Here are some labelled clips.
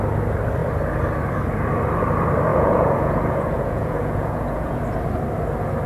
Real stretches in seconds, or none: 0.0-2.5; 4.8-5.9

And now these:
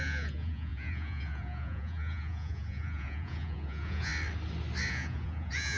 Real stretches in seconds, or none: 4.1-4.9

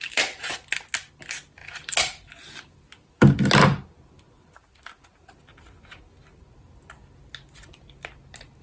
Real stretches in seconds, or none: 0.0-8.6

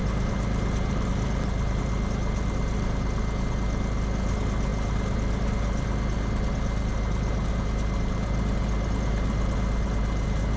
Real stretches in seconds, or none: 0.0-10.6

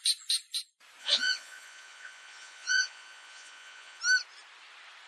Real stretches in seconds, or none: 0.0-1.0; 4.0-5.1

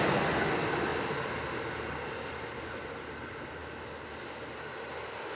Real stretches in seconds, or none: 0.0-5.4

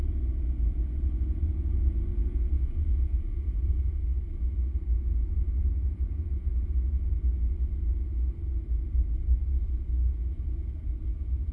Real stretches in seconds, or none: 3.9-5.4; 6.5-10.5